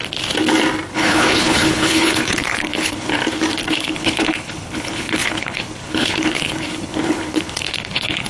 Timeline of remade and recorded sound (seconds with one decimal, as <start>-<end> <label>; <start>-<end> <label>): 0.0-0.9 recorded; 0.9-3.2 remade; 3.2-3.7 recorded; 3.7-8.3 remade